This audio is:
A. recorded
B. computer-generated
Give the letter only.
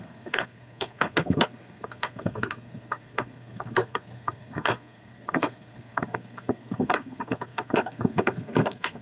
B